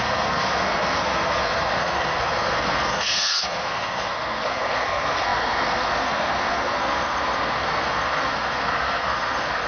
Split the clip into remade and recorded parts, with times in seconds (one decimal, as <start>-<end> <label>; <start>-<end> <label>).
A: 0.0-9.7 remade